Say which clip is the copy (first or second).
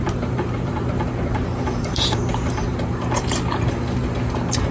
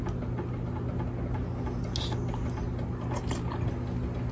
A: first